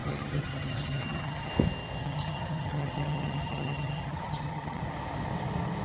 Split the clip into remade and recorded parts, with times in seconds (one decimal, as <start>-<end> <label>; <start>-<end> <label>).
0.0-1.5 remade; 1.5-2.0 recorded; 2.0-4.9 remade; 4.9-5.8 recorded